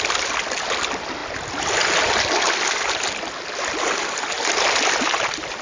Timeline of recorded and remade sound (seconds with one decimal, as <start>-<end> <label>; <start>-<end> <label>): 0.0-5.6 recorded